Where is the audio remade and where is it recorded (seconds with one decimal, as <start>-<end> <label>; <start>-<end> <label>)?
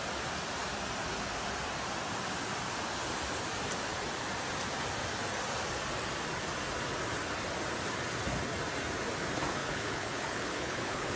0.0-9.6 recorded; 9.6-11.2 remade